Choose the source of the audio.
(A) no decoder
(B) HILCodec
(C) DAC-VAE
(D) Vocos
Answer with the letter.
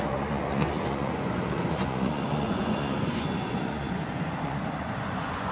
D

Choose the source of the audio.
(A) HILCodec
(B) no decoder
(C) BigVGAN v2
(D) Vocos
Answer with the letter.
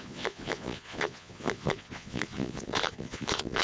D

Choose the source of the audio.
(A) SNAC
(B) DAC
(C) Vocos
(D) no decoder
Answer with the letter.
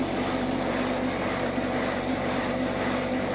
D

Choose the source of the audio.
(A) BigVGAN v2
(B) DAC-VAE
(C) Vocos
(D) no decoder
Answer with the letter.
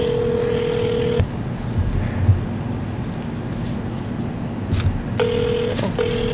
D